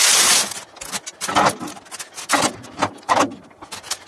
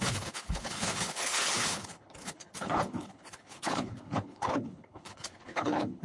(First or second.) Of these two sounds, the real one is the first